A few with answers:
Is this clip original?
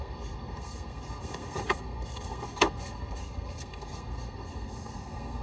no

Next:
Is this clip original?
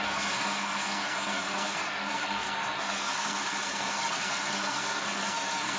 no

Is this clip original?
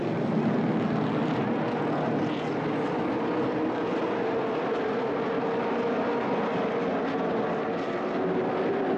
yes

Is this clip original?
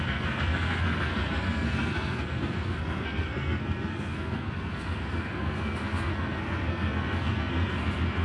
no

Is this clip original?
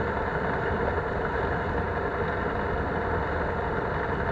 yes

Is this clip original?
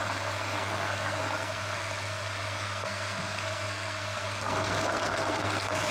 no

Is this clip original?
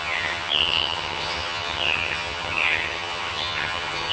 no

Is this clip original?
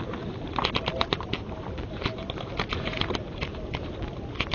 no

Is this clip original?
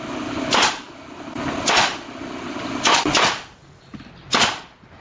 yes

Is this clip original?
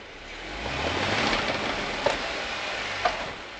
yes